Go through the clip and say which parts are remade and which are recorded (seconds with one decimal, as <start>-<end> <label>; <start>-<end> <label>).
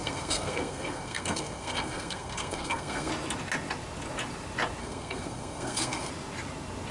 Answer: 0.0-3.1 remade; 3.1-4.8 recorded; 4.8-6.1 remade; 6.1-6.9 recorded